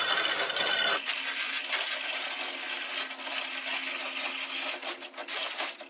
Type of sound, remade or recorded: recorded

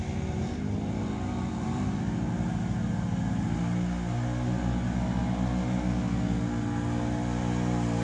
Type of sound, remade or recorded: recorded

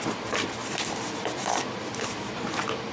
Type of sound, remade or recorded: remade